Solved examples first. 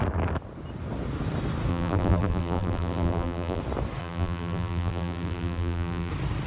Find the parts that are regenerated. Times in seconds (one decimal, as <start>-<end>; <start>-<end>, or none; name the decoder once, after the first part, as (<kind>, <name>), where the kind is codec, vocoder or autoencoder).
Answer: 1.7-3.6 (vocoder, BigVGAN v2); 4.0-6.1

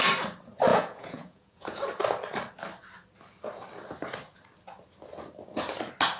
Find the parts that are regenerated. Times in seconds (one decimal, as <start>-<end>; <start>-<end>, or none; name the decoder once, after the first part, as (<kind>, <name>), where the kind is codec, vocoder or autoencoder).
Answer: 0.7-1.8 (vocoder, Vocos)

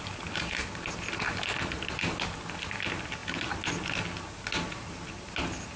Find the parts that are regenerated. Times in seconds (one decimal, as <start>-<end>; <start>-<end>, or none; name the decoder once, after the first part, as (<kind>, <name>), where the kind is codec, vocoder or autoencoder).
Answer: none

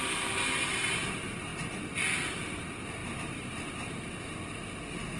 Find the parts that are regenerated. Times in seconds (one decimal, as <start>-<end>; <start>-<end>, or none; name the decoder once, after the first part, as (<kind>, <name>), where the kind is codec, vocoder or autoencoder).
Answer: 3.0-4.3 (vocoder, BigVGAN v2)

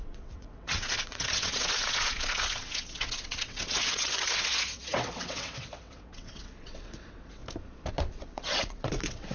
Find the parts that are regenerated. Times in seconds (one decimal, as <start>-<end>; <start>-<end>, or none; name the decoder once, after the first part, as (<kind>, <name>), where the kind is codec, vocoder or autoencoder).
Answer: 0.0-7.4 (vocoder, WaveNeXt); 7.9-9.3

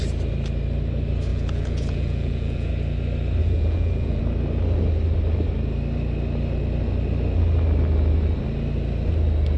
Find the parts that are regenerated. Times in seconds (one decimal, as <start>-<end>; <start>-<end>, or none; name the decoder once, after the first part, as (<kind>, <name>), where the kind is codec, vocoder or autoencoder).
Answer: 1.3-2.7 (vocoder, Vocos); 3.4-4.2

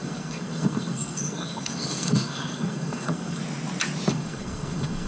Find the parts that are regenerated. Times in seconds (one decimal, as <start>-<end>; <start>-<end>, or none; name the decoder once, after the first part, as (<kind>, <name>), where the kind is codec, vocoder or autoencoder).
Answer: 0.0-3.4 (codec, SNAC); 4.1-5.1

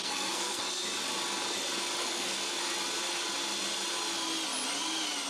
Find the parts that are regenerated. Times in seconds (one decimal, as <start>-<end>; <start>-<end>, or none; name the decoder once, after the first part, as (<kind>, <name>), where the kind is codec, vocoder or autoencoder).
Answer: 0.0-0.6 (codec, SNAC); 2.0-2.6